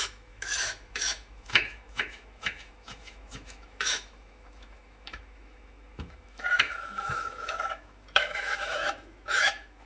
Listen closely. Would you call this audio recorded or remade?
remade